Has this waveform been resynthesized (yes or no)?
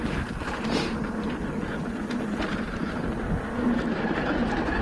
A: no